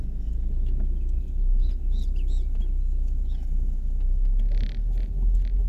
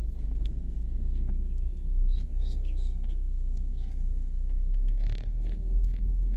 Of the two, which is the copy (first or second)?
second